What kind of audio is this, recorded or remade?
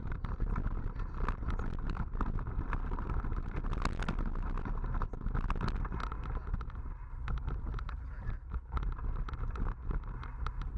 recorded